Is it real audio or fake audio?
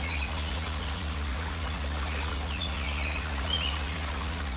fake